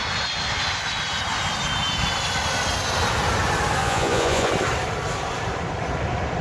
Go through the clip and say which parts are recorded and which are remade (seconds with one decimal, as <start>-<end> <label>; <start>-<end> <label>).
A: 0.0-3.8 recorded; 3.8-4.5 remade; 4.5-6.4 recorded